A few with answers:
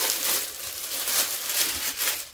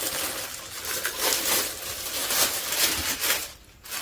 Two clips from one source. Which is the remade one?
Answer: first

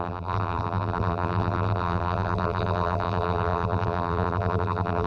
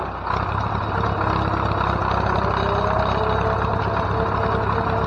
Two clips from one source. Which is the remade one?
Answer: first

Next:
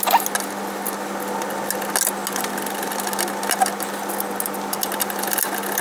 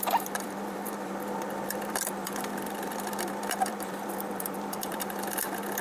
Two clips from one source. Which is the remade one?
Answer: second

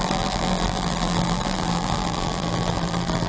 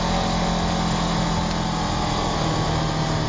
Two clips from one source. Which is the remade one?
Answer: first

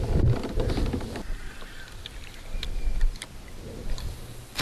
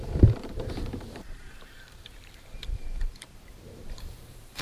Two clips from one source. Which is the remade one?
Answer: second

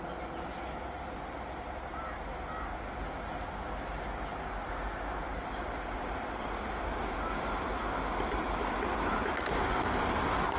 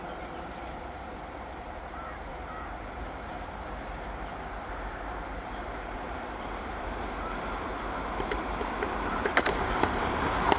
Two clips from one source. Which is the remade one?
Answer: second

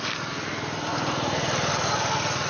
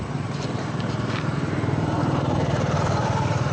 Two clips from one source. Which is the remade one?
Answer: second